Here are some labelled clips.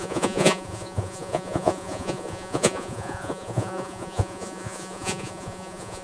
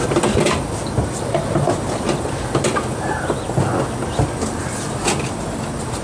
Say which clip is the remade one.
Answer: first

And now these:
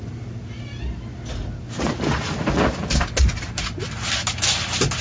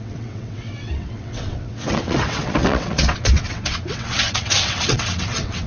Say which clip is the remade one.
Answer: second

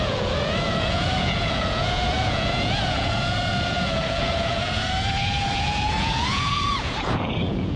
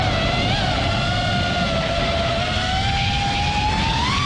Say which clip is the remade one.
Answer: first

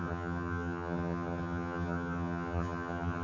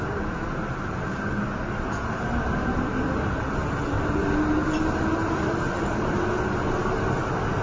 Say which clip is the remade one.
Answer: first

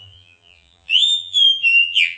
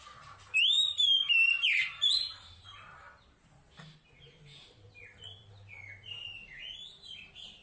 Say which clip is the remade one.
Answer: first